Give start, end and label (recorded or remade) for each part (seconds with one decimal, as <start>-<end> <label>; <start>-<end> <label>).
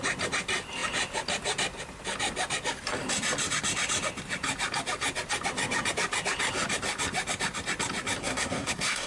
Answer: 0.0-8.2 recorded; 8.2-9.1 remade